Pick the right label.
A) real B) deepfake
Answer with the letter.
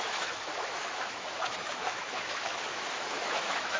B